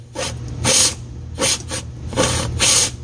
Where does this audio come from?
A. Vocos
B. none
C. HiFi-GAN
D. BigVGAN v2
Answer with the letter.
B